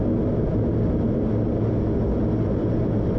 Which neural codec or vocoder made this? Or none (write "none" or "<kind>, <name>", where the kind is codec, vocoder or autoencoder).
none